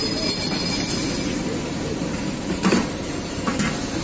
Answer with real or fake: real